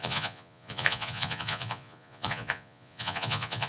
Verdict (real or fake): fake